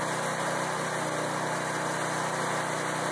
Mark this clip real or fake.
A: real